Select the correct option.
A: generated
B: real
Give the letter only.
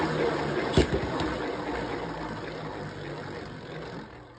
B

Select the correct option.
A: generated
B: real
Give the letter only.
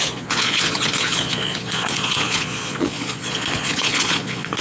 A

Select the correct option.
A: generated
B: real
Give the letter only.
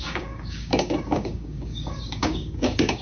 A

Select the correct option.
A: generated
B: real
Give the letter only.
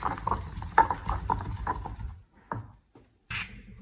A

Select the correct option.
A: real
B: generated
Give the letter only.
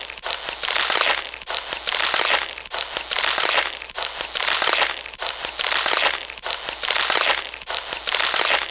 B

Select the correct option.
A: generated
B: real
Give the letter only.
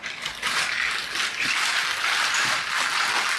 B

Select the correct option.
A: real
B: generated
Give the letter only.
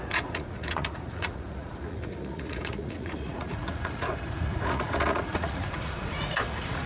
B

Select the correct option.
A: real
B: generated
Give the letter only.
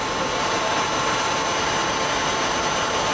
A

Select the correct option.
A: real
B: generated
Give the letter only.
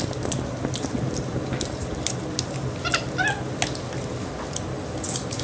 A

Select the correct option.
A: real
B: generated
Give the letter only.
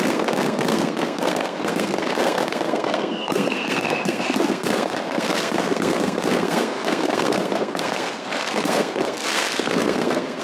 B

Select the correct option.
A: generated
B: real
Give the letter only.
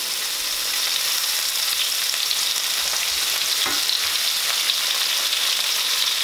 B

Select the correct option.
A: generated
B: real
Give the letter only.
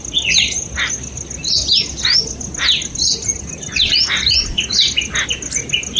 B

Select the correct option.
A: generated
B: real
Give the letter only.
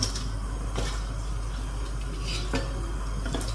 B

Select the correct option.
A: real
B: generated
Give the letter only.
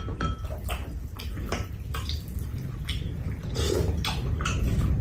A